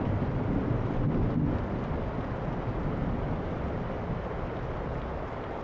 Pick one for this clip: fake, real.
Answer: real